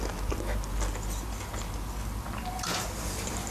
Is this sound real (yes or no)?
yes